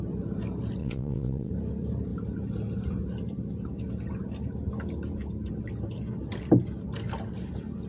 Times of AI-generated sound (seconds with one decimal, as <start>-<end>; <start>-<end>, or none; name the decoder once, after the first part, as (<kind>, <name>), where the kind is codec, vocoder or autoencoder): 0.8-1.5 (vocoder, WaveNeXt)